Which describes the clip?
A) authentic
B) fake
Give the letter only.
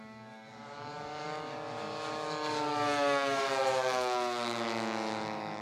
B